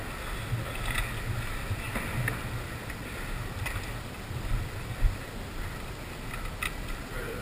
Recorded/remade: recorded